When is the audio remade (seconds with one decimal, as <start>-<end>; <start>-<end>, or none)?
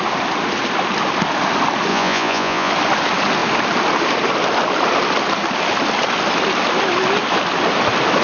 1.9-2.7